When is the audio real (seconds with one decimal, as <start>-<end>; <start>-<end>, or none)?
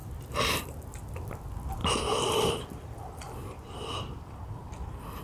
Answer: 0.0-1.8